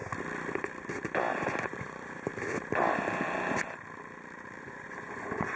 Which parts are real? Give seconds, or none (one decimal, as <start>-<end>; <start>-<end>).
0.0-1.4; 2.3-4.6